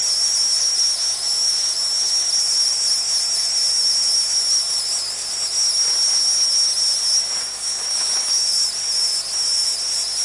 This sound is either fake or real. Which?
real